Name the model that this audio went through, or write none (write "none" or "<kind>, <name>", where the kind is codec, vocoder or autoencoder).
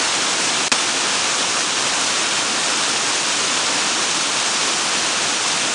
none